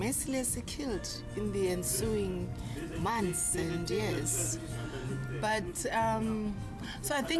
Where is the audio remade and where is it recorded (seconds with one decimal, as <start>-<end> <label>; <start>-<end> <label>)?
0.0-2.5 recorded; 2.5-3.2 remade; 3.2-5.2 recorded; 5.2-5.8 remade; 5.8-6.6 recorded; 6.6-7.4 remade